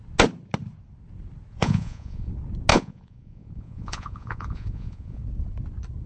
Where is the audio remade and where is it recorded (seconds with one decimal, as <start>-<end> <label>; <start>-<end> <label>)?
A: 0.0-1.5 recorded; 1.5-2.3 remade; 2.3-2.7 recorded; 2.7-5.2 remade; 5.2-6.1 recorded